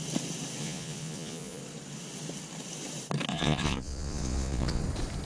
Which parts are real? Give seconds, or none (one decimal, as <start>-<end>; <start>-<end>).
0.0-0.6; 1.6-3.3; 4.8-5.2